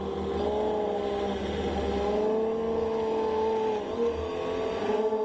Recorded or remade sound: recorded